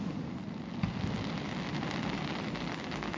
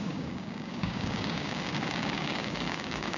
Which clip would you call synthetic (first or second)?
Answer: second